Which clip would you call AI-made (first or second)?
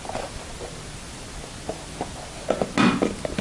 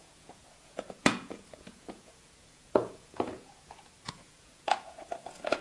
second